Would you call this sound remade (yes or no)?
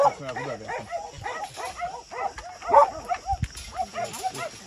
no